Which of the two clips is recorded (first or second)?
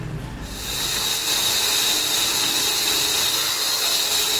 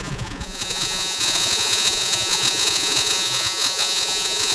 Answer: first